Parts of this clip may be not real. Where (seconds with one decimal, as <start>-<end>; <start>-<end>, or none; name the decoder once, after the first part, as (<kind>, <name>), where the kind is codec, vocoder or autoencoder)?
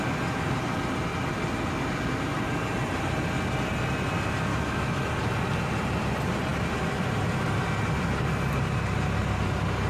4.5-5.1 (autoencoder, DAC-VAE)